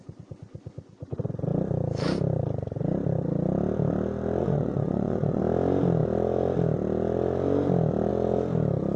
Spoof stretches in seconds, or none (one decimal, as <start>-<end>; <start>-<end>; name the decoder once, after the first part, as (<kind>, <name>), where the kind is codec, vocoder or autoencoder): 4.4-5.4 (vocoder, Vocos)